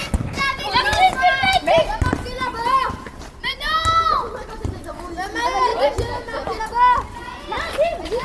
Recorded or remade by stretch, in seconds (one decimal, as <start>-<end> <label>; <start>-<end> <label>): 0.0-5.7 recorded; 5.7-6.6 remade; 6.6-8.2 recorded